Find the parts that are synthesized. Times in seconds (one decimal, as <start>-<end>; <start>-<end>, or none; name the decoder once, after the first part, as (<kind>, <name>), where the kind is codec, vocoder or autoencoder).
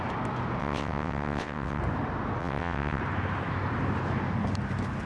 0.6-1.8 (vocoder, WaveNeXt); 2.4-3.0